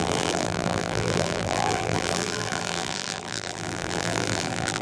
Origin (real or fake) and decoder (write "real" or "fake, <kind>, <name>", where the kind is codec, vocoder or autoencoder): fake, vocoder, BigVGAN v2